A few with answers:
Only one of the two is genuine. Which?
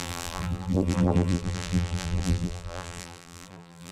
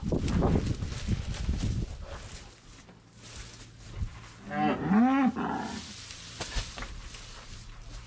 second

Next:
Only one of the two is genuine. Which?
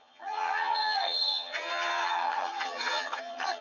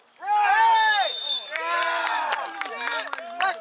second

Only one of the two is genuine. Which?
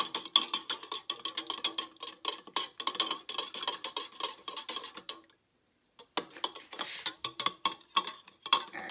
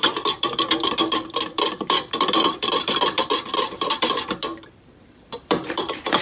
first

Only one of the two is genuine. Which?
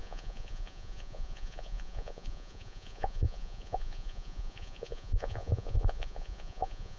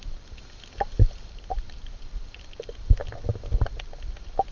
second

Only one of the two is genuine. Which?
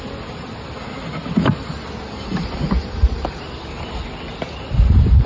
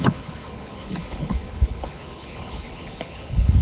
first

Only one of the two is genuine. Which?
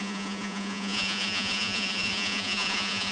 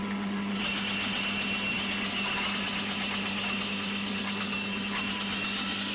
second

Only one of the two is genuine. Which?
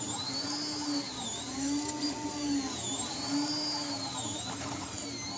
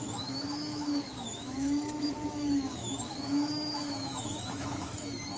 first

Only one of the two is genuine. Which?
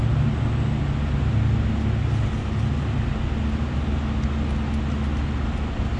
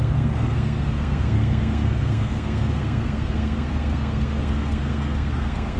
first